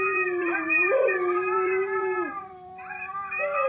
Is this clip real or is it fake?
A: fake